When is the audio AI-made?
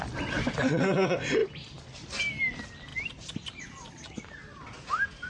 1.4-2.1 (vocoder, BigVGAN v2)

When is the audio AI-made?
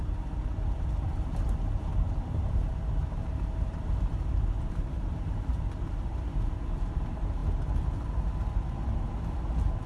0.0-7.4 (vocoder, BigVGAN v2)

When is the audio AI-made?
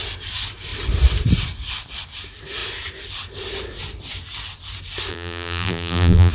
5.1-6.3 (vocoder, BigVGAN v2)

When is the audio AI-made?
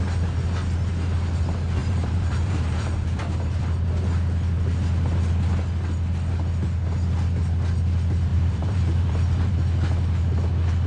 1.8-3.6 (vocoder, BigVGAN v2); 8.3-9.5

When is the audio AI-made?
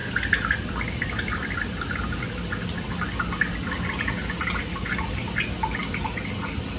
none